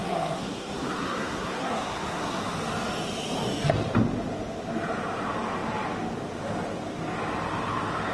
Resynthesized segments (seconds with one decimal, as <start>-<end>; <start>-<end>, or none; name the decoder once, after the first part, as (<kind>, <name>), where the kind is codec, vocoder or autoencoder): 0.0-2.4 (codec, SNAC)